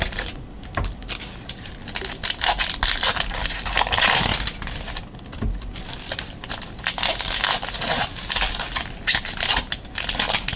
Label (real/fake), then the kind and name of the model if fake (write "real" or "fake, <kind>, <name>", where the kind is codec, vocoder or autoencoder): real